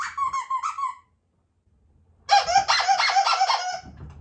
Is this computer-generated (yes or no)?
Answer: no